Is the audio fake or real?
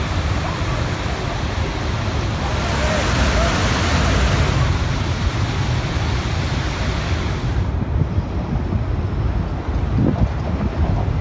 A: real